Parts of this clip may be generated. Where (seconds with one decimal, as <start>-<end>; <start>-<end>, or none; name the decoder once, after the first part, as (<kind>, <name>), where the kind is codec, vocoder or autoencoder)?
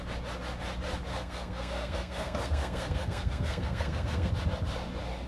1.1-4.3 (codec, SNAC)